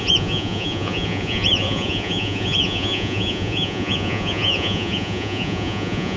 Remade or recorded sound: remade